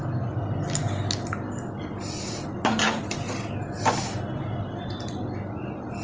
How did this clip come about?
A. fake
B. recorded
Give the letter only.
B